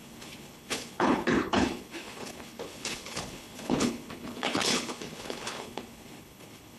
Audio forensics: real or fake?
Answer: fake